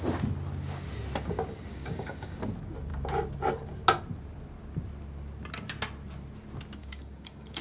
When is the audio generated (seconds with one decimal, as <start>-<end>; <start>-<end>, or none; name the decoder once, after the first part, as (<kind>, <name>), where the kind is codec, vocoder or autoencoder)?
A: 1.7-2.4 (codec, DAC); 6.8-7.6